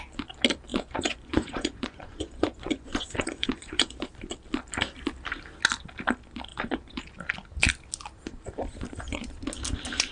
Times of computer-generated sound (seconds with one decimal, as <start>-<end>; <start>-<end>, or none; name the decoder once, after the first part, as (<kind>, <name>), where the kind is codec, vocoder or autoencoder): 0.7-4.1 (vocoder, Vocos); 6.5-7.0

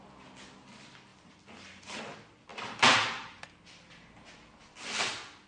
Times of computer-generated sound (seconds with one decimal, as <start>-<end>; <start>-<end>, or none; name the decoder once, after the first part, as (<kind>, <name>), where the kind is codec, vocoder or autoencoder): 1.1-2.0 (vocoder, BigVGAN v2); 2.5-3.4

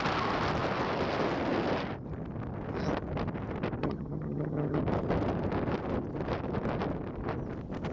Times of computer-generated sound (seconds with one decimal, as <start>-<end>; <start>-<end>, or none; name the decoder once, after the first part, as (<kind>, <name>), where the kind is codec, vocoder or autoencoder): 3.8-4.8 (vocoder, HiFi-GAN)

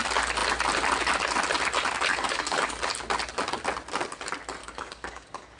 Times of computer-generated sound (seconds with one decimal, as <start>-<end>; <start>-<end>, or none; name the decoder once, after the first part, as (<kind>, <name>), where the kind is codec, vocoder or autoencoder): 2.1-2.7 (codec, DAC); 4.6-5.6

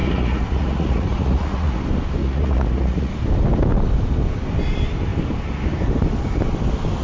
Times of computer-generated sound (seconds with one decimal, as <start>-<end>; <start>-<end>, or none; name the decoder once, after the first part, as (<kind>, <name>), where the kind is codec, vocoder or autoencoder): 0.0-1.8 (vocoder, Vocos); 2.2-3.1